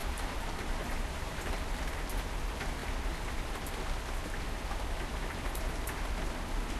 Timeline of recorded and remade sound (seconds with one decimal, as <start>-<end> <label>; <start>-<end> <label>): 0.0-1.4 remade; 1.4-6.8 recorded